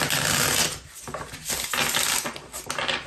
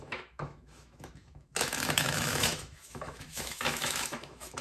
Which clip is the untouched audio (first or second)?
first